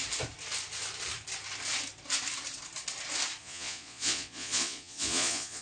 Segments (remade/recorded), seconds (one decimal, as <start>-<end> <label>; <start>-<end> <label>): 0.0-3.4 recorded; 3.4-5.6 remade